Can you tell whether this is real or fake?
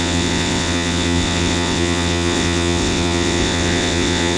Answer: fake